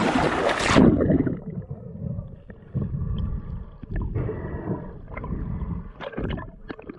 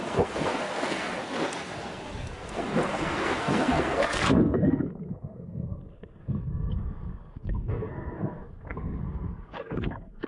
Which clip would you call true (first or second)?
first